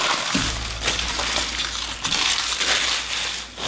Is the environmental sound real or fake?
real